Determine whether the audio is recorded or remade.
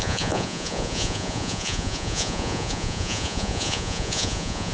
remade